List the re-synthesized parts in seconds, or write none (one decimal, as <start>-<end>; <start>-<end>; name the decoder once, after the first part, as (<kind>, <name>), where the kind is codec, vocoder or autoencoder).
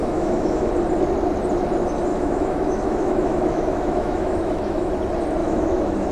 0.0-0.7 (autoencoder, DAC-VAE); 2.1-4.9; 5.4-6.1